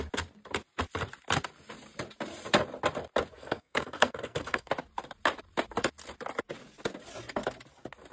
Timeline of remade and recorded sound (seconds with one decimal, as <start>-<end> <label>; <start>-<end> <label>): 0.0-3.3 recorded; 3.3-4.7 remade; 4.7-8.1 recorded